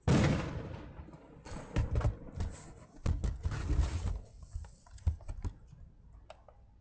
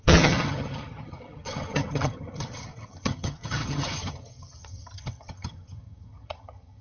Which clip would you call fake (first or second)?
second